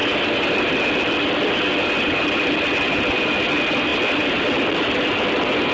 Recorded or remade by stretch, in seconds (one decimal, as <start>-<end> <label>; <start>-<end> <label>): 0.0-5.7 recorded